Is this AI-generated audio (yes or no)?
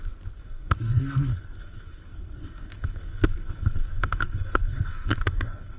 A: yes